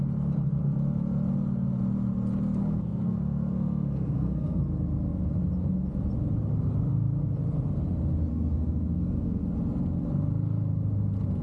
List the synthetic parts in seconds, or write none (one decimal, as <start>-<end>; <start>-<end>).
2.6-4.6; 8.3-9.4